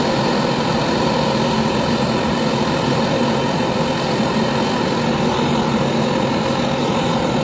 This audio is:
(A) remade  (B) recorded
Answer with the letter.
B